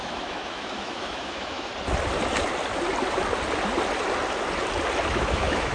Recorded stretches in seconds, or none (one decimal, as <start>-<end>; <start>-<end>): 1.7-5.1